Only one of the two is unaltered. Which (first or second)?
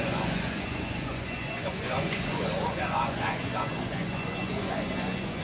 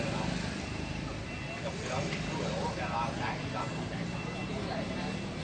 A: second